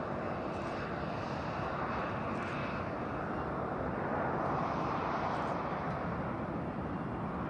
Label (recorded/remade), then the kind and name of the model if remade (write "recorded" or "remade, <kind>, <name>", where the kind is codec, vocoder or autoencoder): remade, vocoder, BigVGAN v2